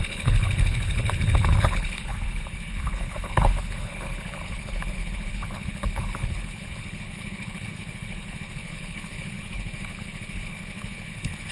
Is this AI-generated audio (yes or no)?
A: yes